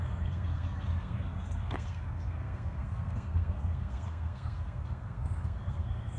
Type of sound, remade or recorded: remade